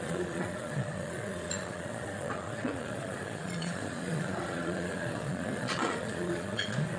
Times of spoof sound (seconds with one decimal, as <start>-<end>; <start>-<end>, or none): 0.0-7.0

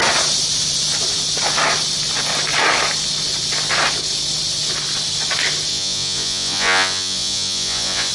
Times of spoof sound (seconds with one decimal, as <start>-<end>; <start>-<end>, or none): 5.7-8.1